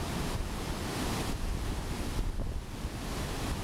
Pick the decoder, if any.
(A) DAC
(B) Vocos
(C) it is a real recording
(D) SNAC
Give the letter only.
C